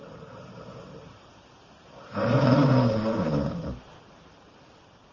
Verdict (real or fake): fake